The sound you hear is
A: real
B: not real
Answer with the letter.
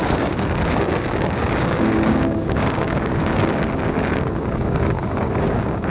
B